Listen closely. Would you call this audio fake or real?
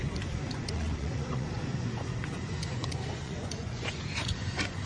fake